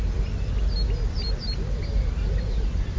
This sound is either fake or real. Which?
real